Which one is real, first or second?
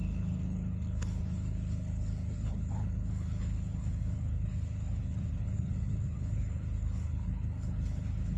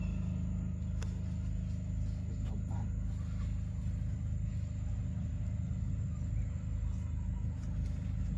second